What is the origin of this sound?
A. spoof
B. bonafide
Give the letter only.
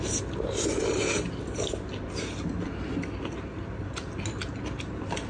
B